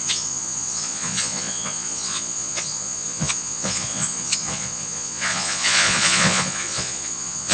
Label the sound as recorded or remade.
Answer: remade